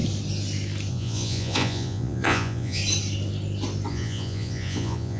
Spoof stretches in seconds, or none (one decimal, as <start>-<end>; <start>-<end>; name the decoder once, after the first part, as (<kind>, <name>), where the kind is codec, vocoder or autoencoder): 0.9-2.8 (vocoder, Vocos); 3.9-5.2